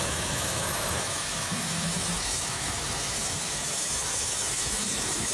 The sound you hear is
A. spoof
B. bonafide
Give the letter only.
A